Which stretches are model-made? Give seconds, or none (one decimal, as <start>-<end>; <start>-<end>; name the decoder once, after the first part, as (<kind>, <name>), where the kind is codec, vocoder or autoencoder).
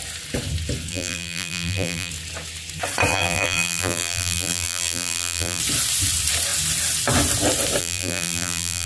0.9-2.1 (vocoder, BigVGAN v2); 3.1-5.6; 7.8-8.9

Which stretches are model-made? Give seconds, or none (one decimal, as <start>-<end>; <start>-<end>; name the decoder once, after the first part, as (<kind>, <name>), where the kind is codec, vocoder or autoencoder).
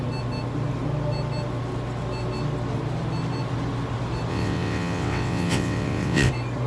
4.3-6.3 (vocoder, WaveNeXt)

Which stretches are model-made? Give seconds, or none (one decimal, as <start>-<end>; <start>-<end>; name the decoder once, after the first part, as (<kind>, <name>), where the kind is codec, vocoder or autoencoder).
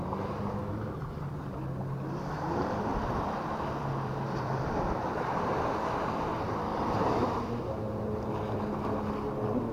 2.9-4.6 (vocoder, BigVGAN v2); 6.7-7.6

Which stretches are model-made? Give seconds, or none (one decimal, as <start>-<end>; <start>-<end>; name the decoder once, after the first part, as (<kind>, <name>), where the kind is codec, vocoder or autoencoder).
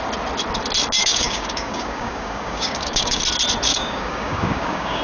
1.0-3.2 (codec, DAC); 3.7-5.0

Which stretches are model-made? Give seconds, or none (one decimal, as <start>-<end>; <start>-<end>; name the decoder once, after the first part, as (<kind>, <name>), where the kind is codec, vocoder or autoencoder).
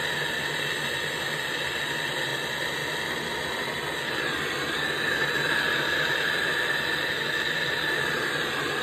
none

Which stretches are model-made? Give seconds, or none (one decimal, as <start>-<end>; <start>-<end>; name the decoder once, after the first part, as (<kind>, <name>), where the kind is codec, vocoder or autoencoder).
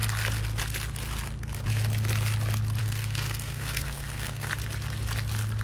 2.8-4.5 (codec, SNAC)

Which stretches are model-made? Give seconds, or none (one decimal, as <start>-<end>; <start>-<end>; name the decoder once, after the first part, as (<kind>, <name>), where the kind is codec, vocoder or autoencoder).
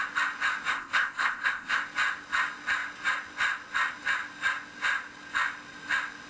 0.7-1.8 (codec, ZipCodec)